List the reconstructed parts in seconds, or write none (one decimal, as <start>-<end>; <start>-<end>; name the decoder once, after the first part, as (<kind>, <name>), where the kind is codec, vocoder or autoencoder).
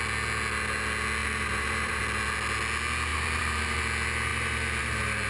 1.2-2.0 (vocoder, BigVGAN v2); 3.1-3.8; 4.3-5.3